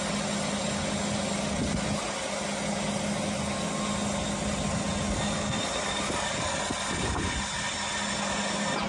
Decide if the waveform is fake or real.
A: real